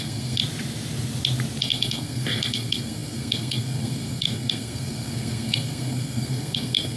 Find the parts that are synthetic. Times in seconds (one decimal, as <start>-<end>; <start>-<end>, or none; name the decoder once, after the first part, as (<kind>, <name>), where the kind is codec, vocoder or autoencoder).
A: 0.0-0.4 (codec, SNAC); 1.6-7.0